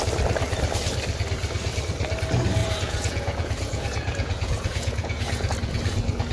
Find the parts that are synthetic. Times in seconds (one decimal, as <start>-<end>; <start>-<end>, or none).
2.6-5.5